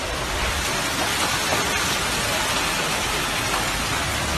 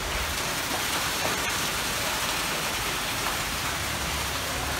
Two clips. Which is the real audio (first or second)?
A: first